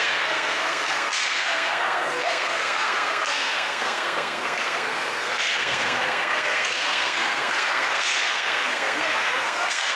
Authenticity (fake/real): fake